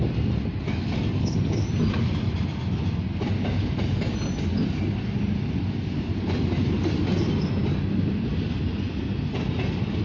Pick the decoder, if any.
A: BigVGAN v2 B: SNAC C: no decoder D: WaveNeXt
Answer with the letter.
C